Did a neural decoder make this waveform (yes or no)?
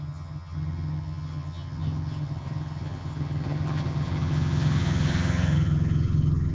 yes